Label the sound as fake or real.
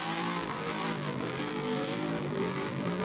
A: fake